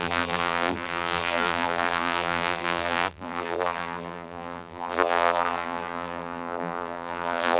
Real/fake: fake